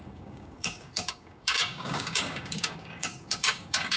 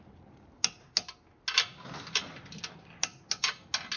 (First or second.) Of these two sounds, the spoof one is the first